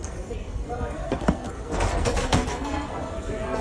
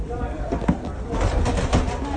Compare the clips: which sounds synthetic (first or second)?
first